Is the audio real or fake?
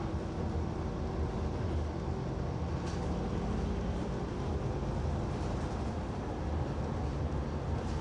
real